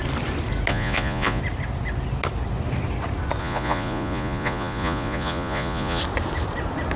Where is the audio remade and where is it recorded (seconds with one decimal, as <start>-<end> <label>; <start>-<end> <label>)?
0.0-0.7 recorded; 0.7-1.4 remade; 1.4-3.4 recorded; 3.4-6.0 remade; 6.0-7.0 recorded